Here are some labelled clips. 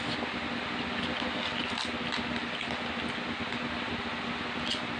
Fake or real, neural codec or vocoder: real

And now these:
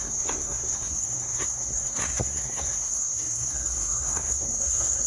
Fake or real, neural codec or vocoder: fake, codec, SNAC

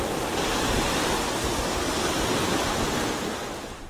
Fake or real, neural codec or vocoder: real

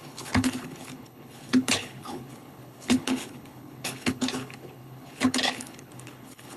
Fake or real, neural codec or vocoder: fake, codec, HILCodec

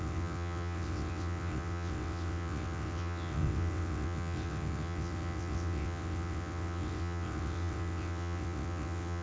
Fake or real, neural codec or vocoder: fake, vocoder, WaveNeXt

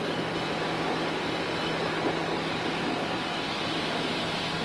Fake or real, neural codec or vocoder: real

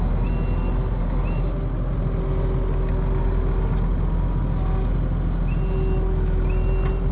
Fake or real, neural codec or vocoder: real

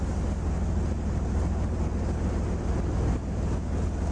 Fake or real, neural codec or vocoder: real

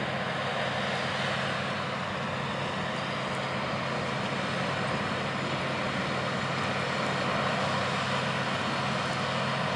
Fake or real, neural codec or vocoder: real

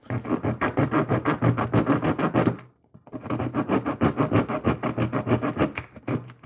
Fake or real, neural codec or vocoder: real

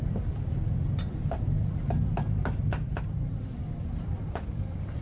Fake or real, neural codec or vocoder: real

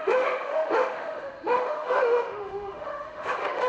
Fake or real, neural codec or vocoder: fake, autoencoder, DAC-VAE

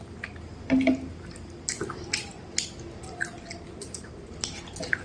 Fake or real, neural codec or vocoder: real